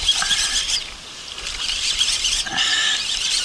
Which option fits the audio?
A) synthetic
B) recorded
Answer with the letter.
B